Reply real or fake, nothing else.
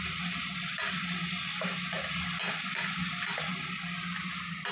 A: real